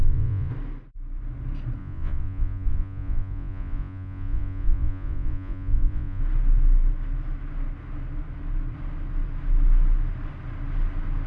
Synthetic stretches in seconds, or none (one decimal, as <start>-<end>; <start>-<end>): 0.0-0.5; 1.8-6.2